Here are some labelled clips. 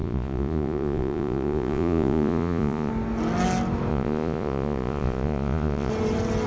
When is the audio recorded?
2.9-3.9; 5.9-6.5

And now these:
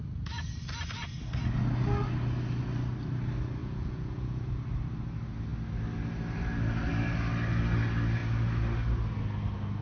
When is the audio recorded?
0.0-3.6; 4.5-9.8

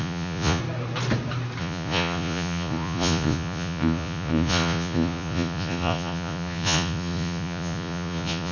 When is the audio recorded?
0.6-1.6